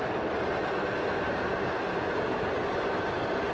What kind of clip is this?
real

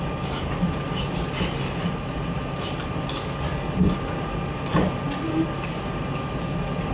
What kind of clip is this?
real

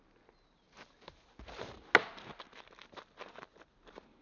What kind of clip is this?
real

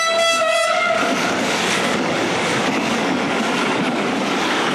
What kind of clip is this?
fake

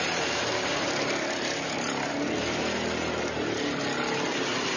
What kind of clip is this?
real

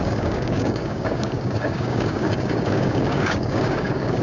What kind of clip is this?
fake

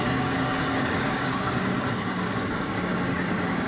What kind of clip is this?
fake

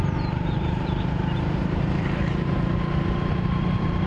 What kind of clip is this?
real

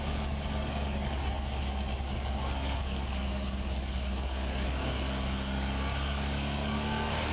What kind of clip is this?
fake